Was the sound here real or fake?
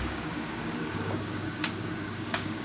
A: fake